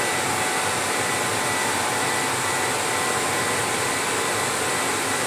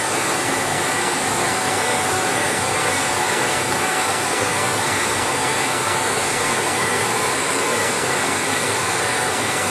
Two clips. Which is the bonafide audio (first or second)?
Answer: first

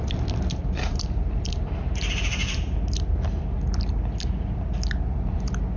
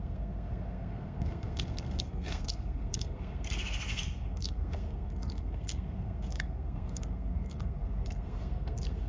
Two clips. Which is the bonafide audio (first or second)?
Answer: first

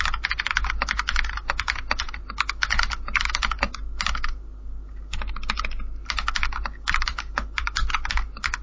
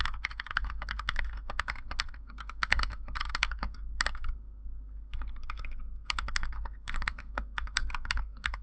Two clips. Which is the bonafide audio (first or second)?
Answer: first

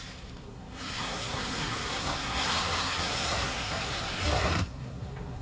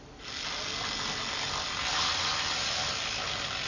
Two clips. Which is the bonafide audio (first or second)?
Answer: second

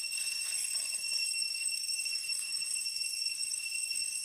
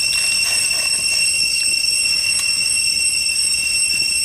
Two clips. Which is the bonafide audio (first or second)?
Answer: second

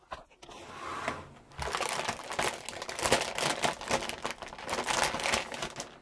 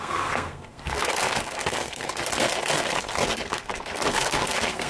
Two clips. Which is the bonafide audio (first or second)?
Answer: first